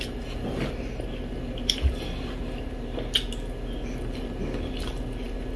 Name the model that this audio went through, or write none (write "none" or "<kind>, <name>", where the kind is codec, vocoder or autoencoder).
none